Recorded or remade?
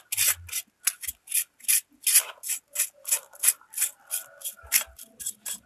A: recorded